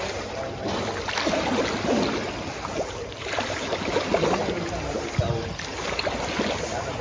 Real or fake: real